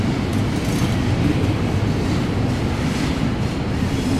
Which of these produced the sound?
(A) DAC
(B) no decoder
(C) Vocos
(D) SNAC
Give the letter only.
B